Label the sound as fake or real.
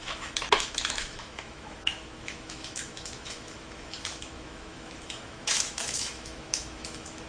fake